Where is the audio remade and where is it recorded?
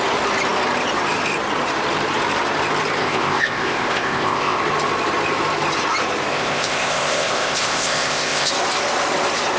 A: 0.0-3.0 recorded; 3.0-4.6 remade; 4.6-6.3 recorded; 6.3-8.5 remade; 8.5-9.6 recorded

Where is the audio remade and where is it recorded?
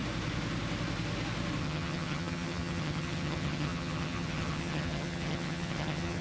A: 0.0-1.6 recorded; 1.6-6.2 remade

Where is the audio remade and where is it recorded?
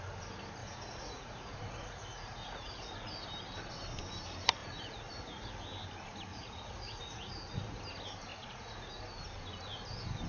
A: 0.0-0.6 recorded; 0.6-2.9 remade; 2.9-4.6 recorded; 4.6-5.6 remade; 5.6-6.3 recorded; 6.3-7.8 remade; 7.8-8.3 recorded; 8.3-8.9 remade; 8.9-10.3 recorded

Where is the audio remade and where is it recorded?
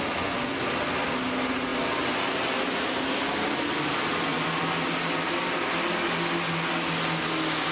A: 0.0-7.7 recorded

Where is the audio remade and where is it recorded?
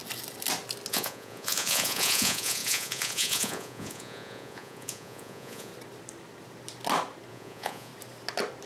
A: 0.0-0.9 recorded; 0.9-5.7 remade; 5.7-7.3 recorded; 7.3-7.9 remade; 7.9-8.7 recorded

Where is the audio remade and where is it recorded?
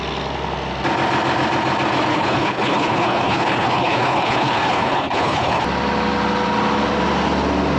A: 0.0-2.1 recorded; 2.1-5.6 remade; 5.6-7.8 recorded